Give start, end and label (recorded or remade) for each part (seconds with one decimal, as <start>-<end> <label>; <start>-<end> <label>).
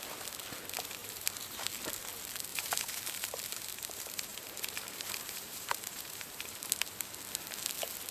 0.0-1.0 recorded; 1.0-1.7 remade; 1.7-2.5 recorded; 2.5-6.9 remade; 6.9-8.1 recorded